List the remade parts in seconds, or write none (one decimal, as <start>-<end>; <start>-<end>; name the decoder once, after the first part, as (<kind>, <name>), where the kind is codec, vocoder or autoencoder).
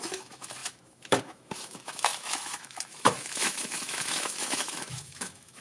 0.0-5.6 (autoencoder, DAC-VAE)